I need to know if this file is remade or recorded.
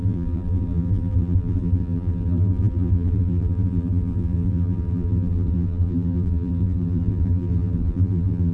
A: remade